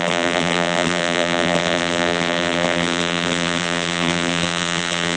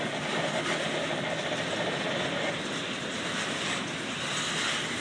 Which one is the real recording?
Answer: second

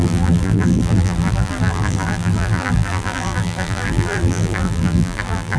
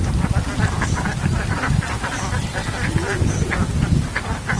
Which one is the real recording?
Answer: second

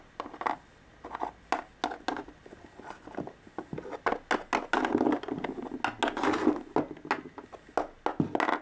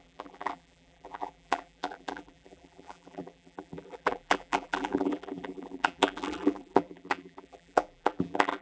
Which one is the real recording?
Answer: first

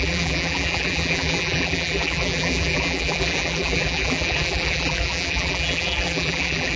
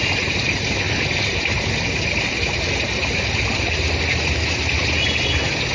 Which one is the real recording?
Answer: second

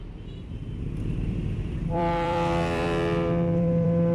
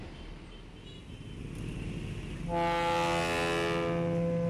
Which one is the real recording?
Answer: second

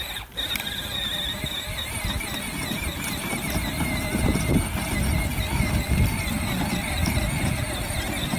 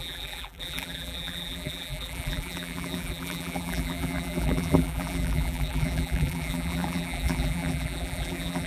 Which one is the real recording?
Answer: first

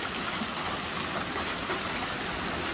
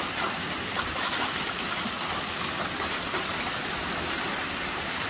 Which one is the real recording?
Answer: first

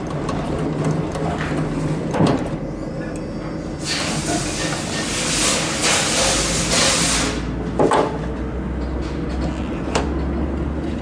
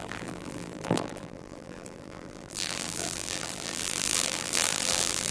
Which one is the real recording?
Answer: first